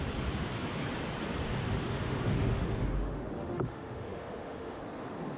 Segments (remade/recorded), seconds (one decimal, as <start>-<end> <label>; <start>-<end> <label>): 0.0-1.6 recorded; 1.6-4.8 remade; 4.8-5.4 recorded